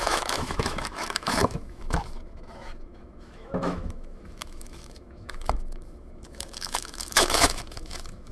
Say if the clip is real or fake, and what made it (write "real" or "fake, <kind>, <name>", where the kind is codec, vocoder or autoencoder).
fake, autoencoder, DAC-VAE